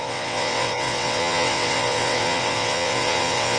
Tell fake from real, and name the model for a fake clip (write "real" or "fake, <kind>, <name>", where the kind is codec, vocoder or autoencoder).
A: fake, vocoder, WaveNeXt